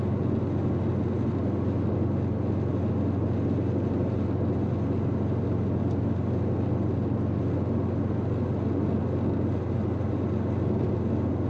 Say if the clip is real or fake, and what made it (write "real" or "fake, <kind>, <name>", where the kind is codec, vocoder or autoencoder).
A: real